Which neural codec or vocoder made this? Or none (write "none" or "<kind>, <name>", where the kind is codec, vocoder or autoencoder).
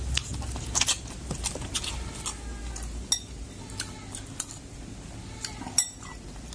none